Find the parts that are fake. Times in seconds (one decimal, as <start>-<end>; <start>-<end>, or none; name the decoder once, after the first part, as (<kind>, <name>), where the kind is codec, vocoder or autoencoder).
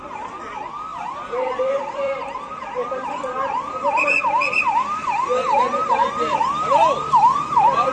0.9-4.0 (vocoder, BigVGAN v2)